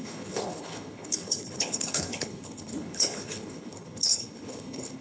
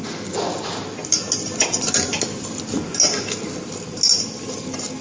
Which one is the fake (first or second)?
first